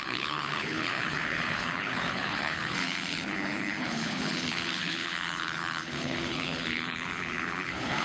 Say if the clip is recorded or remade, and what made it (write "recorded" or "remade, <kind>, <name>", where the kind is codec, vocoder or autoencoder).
remade, codec, HILCodec